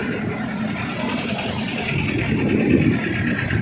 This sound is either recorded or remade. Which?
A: recorded